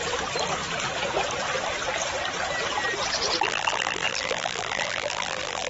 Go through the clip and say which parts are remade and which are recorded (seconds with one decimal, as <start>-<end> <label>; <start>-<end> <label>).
0.0-3.4 recorded; 3.4-5.7 remade